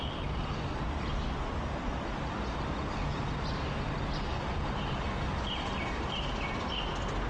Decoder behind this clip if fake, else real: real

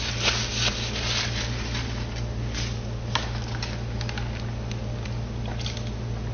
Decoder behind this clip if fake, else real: real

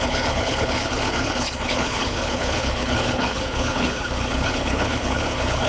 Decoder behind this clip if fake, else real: fake, codec, HILCodec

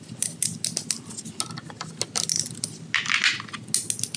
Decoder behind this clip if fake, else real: real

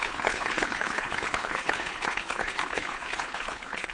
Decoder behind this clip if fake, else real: fake, codec, HILCodec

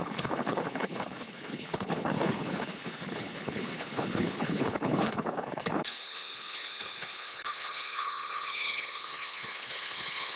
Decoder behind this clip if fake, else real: fake, codec, HILCodec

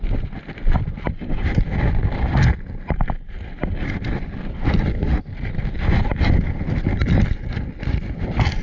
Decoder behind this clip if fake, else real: real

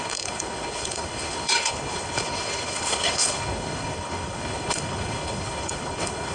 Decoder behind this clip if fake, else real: fake, codec, HILCodec